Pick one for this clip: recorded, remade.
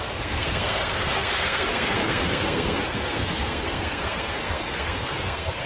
remade